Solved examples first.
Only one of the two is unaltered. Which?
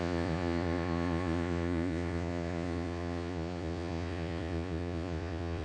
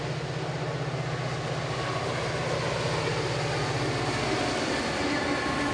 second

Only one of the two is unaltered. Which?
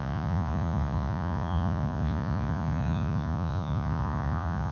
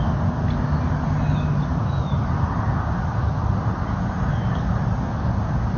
second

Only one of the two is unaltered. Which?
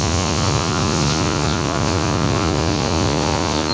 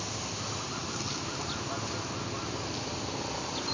second